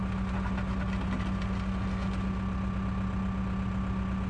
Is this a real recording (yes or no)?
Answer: yes